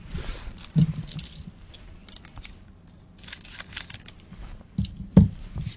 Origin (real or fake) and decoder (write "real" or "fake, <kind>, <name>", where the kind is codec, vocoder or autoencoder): real